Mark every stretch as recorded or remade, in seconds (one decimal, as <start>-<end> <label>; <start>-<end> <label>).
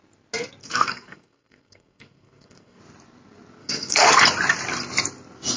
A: 0.0-0.6 recorded; 0.6-2.8 remade; 2.8-3.6 recorded; 3.6-4.1 remade; 4.1-5.6 recorded